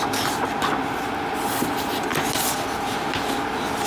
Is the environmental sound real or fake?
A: real